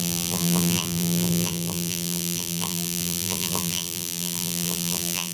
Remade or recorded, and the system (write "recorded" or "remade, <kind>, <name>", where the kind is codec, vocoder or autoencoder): remade, vocoder, BigVGAN v2